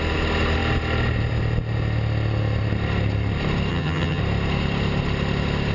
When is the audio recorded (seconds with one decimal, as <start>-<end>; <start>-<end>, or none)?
0.0-3.7; 4.2-5.7